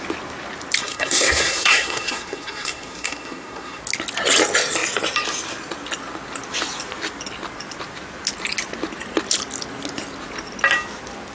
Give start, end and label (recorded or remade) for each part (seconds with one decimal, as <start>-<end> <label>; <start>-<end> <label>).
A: 0.0-0.8 recorded; 0.8-3.8 remade; 3.8-11.3 recorded